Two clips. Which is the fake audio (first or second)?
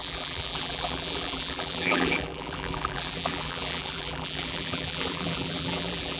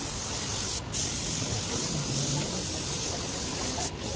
first